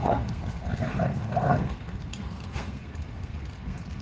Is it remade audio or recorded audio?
remade